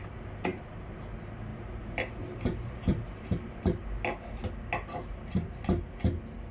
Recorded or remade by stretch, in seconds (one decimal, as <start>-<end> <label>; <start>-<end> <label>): 0.0-0.5 recorded; 0.5-1.0 remade; 1.0-1.5 recorded; 1.5-3.5 remade; 3.5-6.5 recorded